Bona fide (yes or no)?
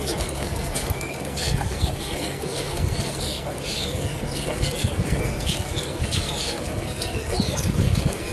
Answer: no